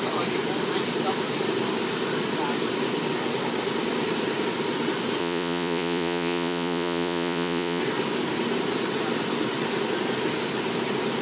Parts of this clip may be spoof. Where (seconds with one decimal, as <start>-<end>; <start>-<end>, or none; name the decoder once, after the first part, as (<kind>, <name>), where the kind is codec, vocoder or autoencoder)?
5.2-7.8 (vocoder, Vocos)